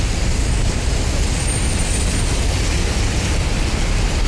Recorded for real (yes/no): yes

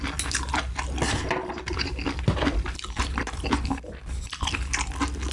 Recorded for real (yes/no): yes